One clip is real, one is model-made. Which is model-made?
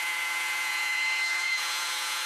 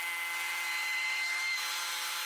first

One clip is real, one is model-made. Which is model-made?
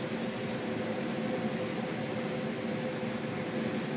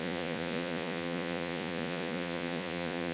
second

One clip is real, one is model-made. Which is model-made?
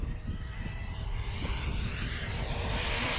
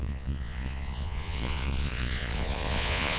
second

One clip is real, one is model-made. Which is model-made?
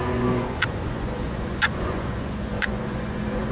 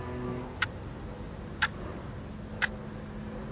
first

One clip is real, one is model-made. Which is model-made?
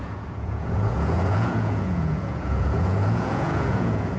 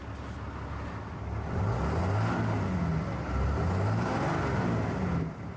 first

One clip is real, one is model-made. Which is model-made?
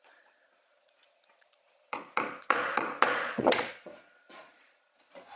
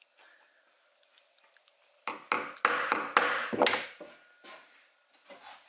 first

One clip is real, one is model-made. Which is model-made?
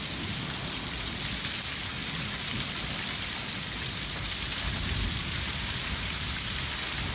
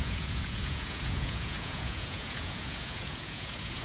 second